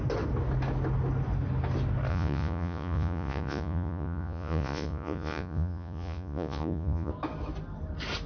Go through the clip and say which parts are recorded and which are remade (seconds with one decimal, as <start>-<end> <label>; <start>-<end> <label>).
0.0-2.1 recorded; 2.1-7.1 remade; 7.1-8.3 recorded